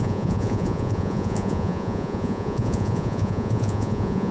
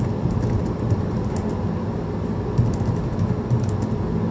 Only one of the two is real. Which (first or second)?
second